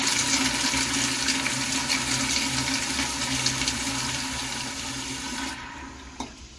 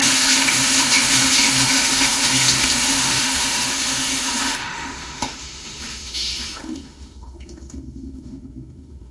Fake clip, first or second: second